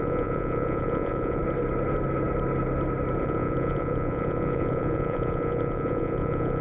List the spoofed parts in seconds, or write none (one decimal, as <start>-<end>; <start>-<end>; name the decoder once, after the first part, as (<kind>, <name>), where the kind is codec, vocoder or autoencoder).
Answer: 0.0-1.4 (vocoder, Vocos); 3.2-6.6